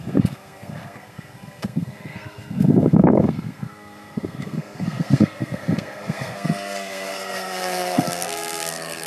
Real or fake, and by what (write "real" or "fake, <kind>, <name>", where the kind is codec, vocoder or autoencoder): fake, codec, SNAC